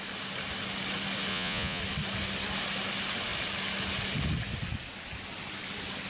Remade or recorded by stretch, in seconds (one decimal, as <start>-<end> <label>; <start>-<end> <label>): 0.0-1.3 recorded; 1.3-1.8 remade; 1.8-6.1 recorded